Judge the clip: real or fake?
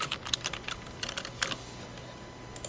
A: real